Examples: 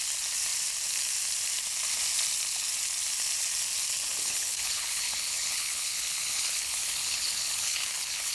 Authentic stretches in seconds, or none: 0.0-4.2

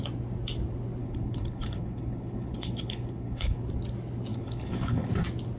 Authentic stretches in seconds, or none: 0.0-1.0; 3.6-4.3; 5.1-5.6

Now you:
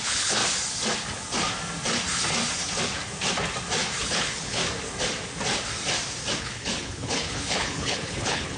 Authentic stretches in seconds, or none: 0.4-4.0; 4.6-6.4